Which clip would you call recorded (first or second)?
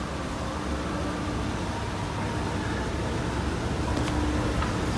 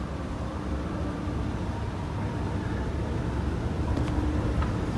first